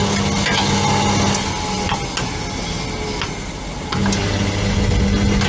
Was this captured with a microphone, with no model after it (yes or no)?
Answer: yes